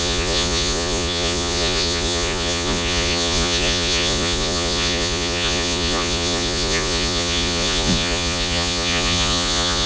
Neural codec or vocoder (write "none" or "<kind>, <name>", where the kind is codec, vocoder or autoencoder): vocoder, Vocos